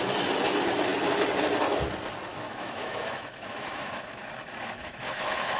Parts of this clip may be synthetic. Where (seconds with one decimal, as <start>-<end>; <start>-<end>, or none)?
2.3-4.2; 4.8-5.6